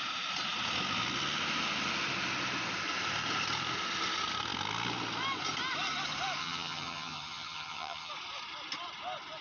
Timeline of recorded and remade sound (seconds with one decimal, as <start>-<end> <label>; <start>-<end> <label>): 0.0-6.4 recorded; 6.4-8.1 remade; 8.1-9.4 recorded